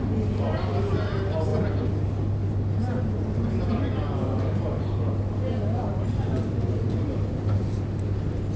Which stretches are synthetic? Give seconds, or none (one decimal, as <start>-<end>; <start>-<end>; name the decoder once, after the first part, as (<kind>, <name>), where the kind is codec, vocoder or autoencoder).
none